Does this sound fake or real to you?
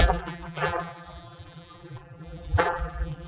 fake